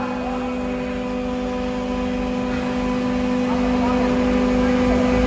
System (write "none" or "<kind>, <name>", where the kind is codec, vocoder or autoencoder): none